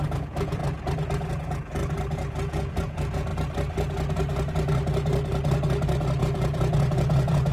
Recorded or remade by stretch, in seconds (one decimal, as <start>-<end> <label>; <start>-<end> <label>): 0.0-0.6 remade; 0.6-1.3 recorded; 1.3-1.8 remade; 1.8-2.3 recorded; 2.3-3.3 remade; 3.3-6.2 recorded; 6.2-7.5 remade